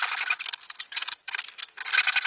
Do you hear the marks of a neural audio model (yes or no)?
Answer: no